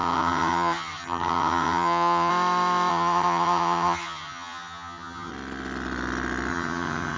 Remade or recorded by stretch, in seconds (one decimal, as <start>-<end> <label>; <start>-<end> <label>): 0.0-2.3 remade; 2.3-2.9 recorded; 2.9-5.3 remade; 5.3-6.5 recorded; 6.5-7.2 remade